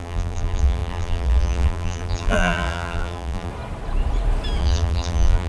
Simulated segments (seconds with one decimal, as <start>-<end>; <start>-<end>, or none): 0.0-3.5; 4.6-5.5